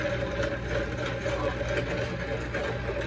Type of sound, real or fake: real